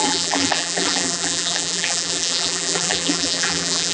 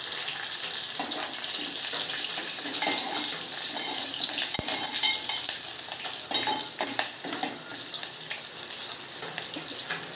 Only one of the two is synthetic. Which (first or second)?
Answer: first